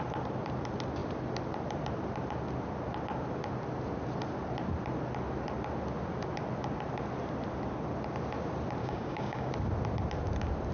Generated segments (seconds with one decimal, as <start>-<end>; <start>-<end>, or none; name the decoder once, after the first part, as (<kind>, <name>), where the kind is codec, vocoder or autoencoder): 8.8-9.5 (codec, DAC)